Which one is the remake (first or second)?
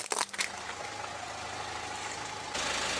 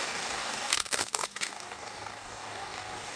second